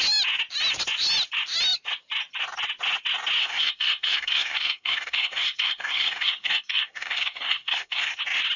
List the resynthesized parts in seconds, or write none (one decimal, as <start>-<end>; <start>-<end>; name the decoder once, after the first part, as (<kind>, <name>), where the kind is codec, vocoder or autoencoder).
3.4-8.2 (codec, SNAC)